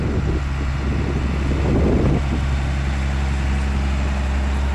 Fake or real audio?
real